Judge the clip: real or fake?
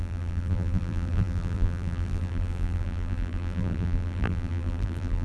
fake